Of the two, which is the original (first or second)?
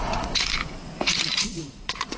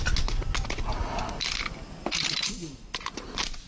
second